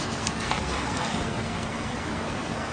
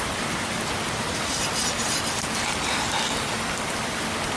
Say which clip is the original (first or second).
second